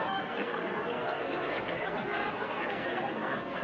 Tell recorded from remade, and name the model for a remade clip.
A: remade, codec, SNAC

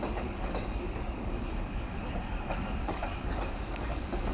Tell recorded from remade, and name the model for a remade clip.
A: remade, codec, DAC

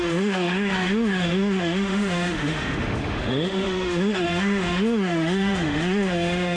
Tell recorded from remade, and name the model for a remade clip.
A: remade, autoencoder, DAC-VAE